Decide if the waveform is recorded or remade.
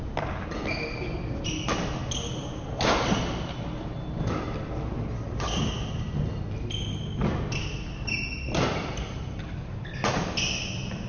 recorded